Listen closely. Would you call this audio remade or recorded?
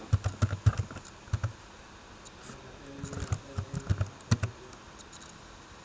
recorded